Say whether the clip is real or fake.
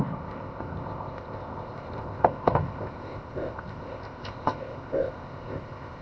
fake